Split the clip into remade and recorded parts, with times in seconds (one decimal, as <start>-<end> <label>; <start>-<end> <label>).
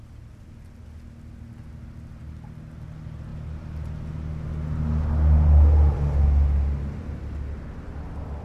0.0-8.4 recorded